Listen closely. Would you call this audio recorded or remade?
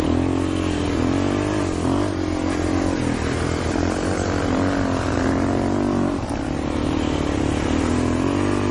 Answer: recorded